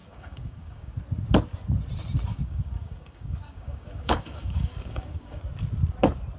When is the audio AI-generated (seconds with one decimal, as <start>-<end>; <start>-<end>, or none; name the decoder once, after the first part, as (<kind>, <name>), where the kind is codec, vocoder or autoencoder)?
0.0-1.0 (codec, DAC); 2.3-5.4